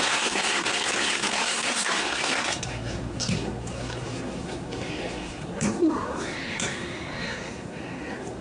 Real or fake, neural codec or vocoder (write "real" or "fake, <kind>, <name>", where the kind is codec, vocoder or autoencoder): fake, codec, SNAC